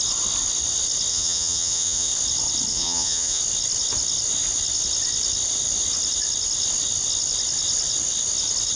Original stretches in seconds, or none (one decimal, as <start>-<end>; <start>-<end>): 0.0-1.1; 2.1-2.7; 3.4-8.8